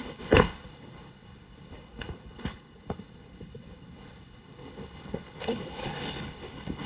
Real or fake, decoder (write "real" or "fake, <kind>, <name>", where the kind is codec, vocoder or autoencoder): fake, codec, HILCodec